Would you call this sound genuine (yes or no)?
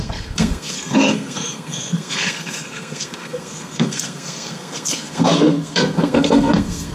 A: no